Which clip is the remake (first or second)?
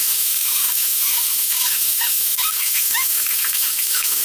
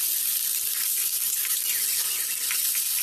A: first